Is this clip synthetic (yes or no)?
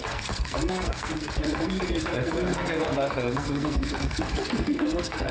yes